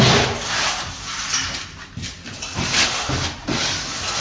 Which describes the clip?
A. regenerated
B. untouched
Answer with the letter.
B